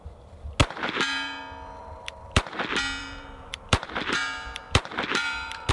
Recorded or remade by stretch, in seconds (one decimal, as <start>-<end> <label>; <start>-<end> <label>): 0.0-0.6 recorded; 0.6-1.4 remade; 1.4-1.8 recorded; 1.8-2.6 remade; 2.6-3.0 recorded; 3.0-5.7 remade